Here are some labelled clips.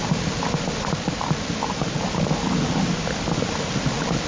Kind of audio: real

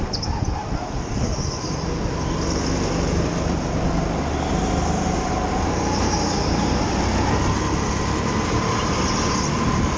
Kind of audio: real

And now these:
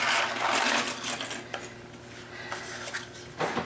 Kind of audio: real